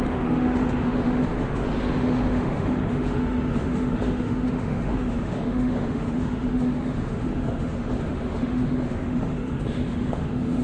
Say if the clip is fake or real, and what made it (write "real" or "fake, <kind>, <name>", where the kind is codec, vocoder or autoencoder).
fake, autoencoder, DAC-VAE